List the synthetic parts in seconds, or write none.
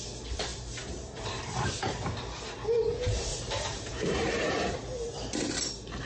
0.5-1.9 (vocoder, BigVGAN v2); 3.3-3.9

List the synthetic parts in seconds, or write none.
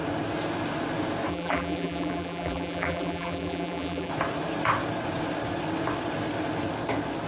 1.3-4.1 (vocoder, BigVGAN v2)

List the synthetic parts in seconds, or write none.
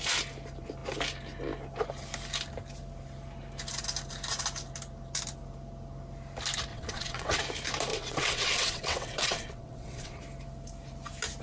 6.7-7.4 (vocoder, WaveNeXt); 7.9-10.2